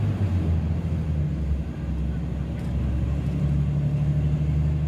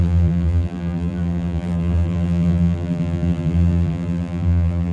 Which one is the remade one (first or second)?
second